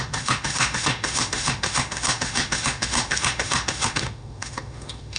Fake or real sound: fake